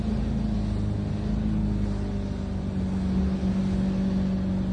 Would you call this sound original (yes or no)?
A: yes